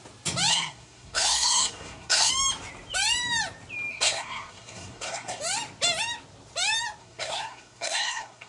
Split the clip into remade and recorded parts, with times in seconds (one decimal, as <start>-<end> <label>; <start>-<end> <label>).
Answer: 0.0-0.5 recorded; 0.5-2.3 remade; 2.3-3.9 recorded; 3.9-5.4 remade; 5.4-7.0 recorded; 7.0-8.5 remade